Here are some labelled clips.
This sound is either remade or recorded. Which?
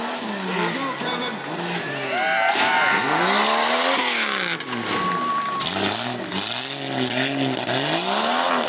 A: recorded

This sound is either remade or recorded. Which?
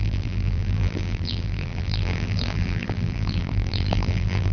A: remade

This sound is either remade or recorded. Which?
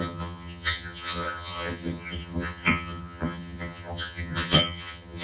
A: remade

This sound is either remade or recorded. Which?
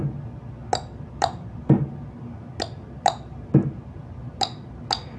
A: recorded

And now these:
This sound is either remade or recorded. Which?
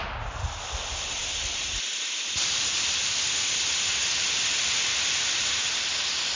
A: recorded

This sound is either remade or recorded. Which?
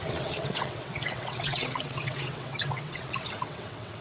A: remade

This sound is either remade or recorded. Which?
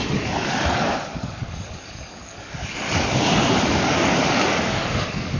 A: remade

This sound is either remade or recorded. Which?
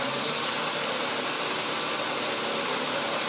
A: recorded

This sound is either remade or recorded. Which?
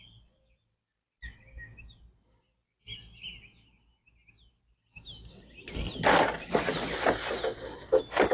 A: recorded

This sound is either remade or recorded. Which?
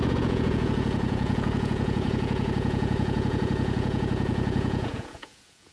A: remade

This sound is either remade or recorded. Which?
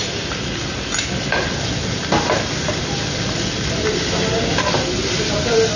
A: recorded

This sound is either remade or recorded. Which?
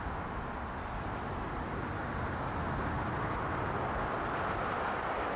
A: recorded